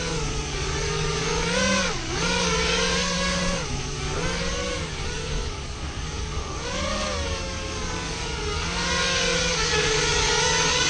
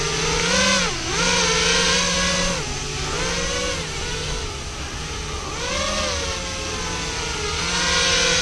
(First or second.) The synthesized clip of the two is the first